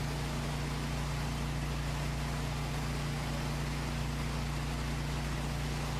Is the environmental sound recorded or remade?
recorded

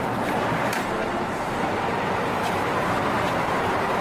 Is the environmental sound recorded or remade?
remade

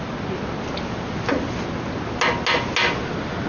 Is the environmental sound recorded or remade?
recorded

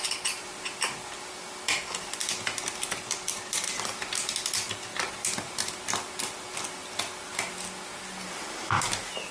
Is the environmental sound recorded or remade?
recorded